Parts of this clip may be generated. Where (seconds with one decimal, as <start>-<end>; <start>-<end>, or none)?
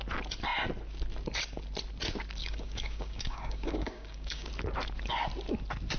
2.4-4.5